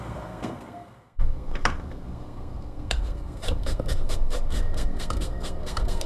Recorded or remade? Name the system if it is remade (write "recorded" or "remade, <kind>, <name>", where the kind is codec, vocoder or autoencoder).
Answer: remade, codec, SNAC